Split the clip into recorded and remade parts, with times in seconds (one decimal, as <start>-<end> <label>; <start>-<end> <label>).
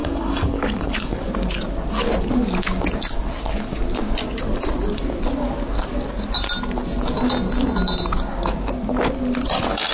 0.0-1.3 remade; 1.3-9.9 recorded